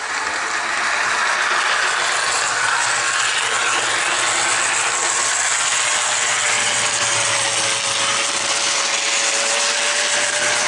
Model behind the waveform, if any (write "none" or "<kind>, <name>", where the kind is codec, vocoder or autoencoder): none